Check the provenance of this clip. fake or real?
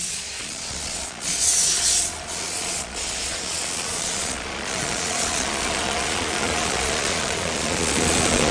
fake